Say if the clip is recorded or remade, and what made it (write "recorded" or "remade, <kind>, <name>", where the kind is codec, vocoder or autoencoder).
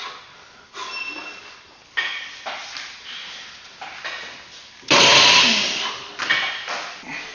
recorded